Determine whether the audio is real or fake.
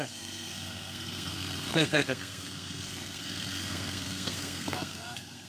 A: fake